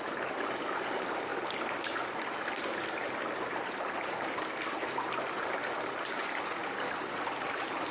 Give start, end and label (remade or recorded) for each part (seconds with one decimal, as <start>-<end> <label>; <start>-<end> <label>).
0.0-1.3 remade; 1.3-3.2 recorded; 3.2-7.9 remade